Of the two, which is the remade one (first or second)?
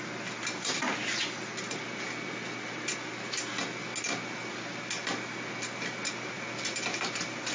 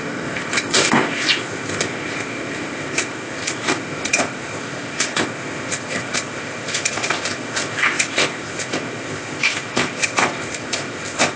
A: second